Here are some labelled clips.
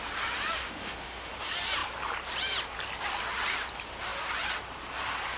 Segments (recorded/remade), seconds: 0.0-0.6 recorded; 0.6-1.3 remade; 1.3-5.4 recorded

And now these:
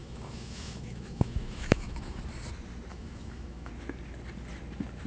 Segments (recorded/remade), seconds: 0.0-2.2 remade; 2.2-2.9 recorded; 2.9-3.7 remade; 3.7-5.1 recorded

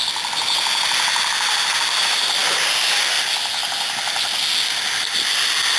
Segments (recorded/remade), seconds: 0.0-5.8 recorded

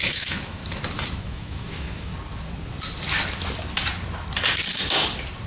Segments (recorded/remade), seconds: 0.0-0.6 remade; 0.6-1.2 recorded; 1.2-2.1 remade; 2.1-5.5 recorded

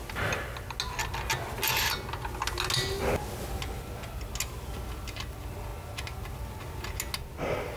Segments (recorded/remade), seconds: 0.0-7.8 recorded

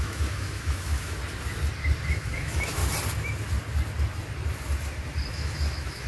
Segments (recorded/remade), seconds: 0.0-1.2 remade; 1.2-2.1 recorded; 2.1-2.8 remade; 2.8-5.3 recorded; 5.3-6.1 remade